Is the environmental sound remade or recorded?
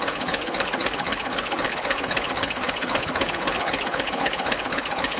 remade